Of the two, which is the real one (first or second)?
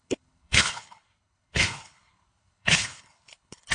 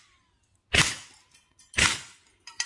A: second